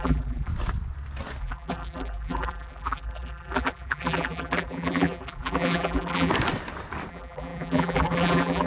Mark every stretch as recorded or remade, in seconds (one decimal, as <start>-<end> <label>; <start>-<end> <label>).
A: 0.0-0.5 remade; 0.5-1.4 recorded; 1.4-6.3 remade; 6.3-7.1 recorded; 7.1-8.7 remade